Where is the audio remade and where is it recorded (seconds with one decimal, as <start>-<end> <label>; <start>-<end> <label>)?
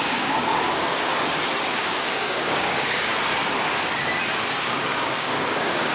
0.0-1.1 remade; 1.1-1.7 recorded; 1.7-3.1 remade; 3.1-4.6 recorded; 4.6-5.9 remade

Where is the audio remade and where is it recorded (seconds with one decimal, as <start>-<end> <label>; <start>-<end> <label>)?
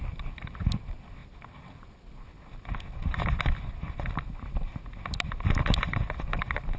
0.0-6.8 recorded